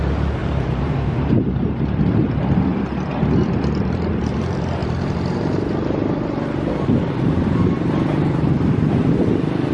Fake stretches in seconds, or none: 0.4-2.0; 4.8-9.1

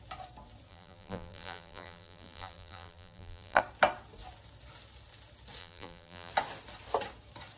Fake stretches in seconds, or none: 0.7-3.6; 5.6-6.3